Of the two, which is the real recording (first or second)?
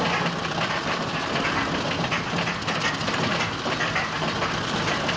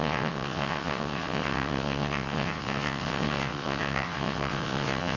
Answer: first